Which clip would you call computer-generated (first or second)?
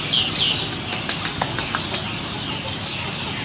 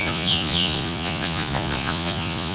second